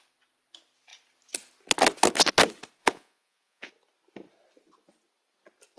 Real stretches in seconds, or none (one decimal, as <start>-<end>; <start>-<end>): 0.0-2.8; 3.7-5.8